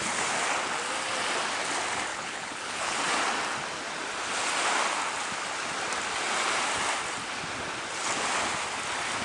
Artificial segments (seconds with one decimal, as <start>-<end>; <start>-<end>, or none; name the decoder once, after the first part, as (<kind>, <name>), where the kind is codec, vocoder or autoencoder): 2.1-3.0 (codec, HILCodec)